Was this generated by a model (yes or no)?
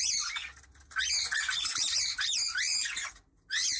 no